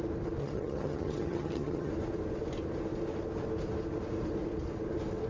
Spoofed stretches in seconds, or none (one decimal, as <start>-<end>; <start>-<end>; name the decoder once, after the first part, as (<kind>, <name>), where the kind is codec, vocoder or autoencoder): 0.4-1.9 (vocoder, HiFi-GAN)